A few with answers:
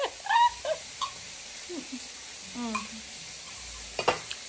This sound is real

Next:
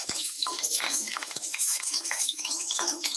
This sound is fake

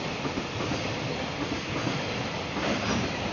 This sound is real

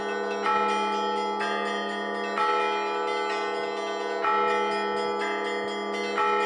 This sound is real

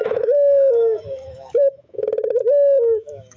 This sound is fake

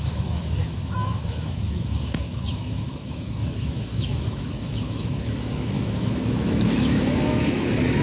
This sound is fake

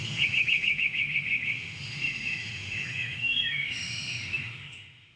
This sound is fake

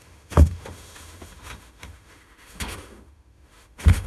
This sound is fake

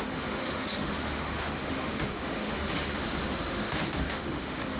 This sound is fake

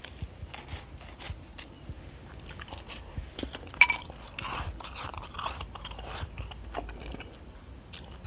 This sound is real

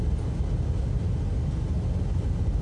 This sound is real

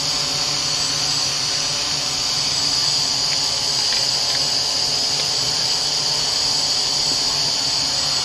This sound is real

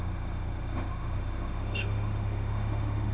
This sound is fake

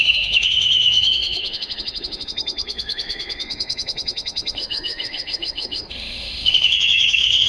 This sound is fake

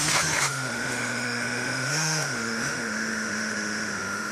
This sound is fake